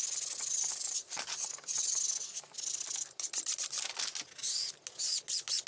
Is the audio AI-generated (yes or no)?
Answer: no